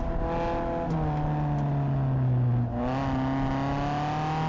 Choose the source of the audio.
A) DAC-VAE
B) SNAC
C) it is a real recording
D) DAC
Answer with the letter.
C